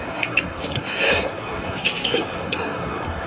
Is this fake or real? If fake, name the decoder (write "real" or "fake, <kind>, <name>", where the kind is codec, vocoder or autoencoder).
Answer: fake, codec, SNAC